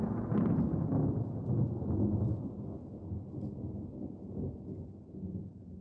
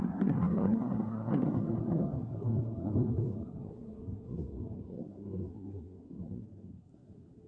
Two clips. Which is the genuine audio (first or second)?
first